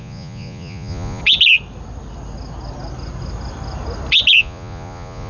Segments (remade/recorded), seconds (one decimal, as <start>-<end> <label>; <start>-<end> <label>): 0.0-1.2 remade; 1.2-4.4 recorded; 4.4-5.3 remade

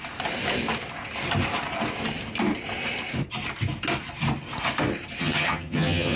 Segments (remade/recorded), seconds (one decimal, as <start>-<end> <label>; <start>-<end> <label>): 0.0-5.2 recorded; 5.2-6.2 remade

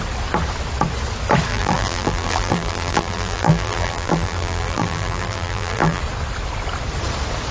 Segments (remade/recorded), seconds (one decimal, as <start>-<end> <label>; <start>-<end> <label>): 0.0-1.5 recorded; 1.5-6.0 remade; 6.0-7.5 recorded